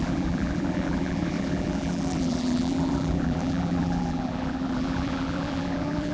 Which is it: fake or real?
fake